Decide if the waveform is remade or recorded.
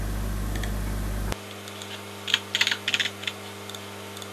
recorded